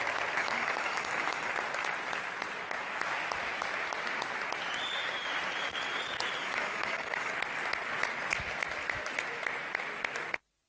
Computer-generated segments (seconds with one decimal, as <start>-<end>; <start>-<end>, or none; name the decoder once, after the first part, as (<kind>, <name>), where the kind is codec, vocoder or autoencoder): 0.4-1.5 (codec, DAC); 6.4-7.3

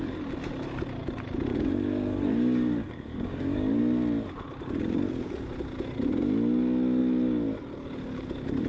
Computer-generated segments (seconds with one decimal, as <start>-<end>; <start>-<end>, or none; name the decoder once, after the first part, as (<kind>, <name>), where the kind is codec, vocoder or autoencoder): 1.5-3.8 (codec, DAC)